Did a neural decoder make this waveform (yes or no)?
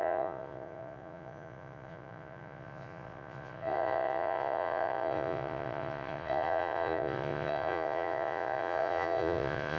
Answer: yes